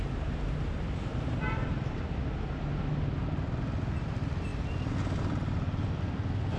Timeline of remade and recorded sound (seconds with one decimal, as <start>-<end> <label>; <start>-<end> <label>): 0.0-1.1 recorded; 1.1-2.3 remade; 2.3-6.6 recorded